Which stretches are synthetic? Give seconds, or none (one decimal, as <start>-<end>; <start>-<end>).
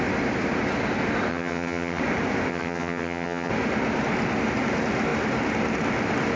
1.3-2.0; 2.5-3.5